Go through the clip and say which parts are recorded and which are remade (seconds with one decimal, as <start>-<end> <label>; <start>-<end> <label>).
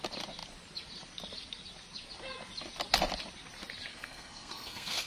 0.0-3.9 recorded; 3.9-5.1 remade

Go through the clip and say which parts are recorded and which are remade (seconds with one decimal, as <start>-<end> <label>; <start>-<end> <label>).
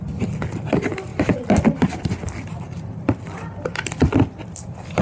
0.0-1.1 recorded; 1.1-4.1 remade; 4.1-5.0 recorded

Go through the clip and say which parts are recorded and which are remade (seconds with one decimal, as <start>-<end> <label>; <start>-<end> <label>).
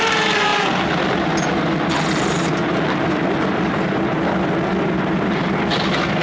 0.0-6.2 recorded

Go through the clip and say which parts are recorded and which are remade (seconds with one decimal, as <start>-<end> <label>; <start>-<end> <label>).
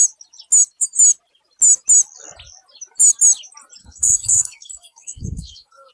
0.0-3.8 recorded; 3.8-5.9 remade